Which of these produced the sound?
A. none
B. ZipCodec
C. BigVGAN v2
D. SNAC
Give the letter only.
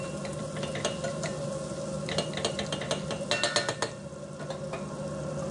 A